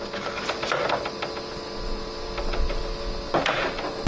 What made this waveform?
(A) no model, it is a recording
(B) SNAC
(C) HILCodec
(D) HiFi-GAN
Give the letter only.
A